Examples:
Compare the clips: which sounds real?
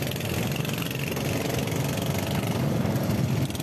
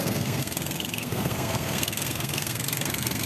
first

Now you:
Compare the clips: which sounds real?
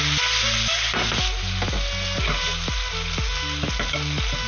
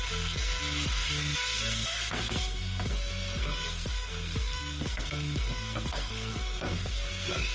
first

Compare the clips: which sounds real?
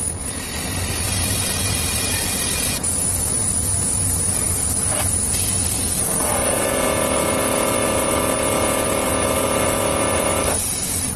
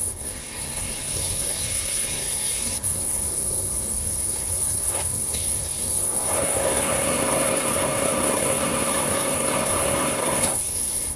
first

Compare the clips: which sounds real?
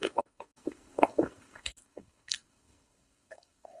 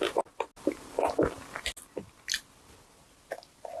second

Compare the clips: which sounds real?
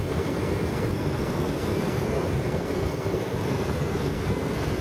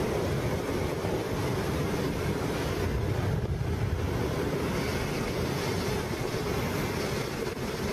second